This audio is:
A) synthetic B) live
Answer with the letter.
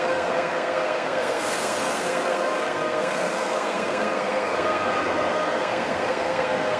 A